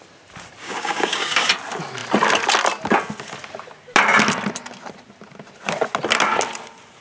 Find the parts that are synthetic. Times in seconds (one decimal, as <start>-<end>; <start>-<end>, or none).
0.6-1.5